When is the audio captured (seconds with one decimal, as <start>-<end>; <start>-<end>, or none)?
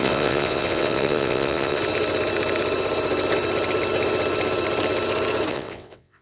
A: 1.8-5.5